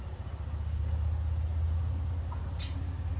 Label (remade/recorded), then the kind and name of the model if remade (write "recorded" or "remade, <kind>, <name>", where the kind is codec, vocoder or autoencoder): recorded